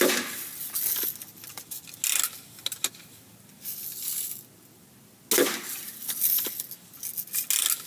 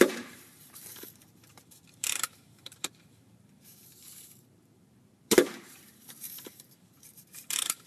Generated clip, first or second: second